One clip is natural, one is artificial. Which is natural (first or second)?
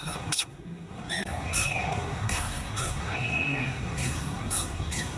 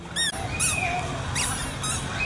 second